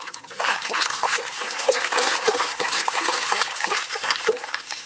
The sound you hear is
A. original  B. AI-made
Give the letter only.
B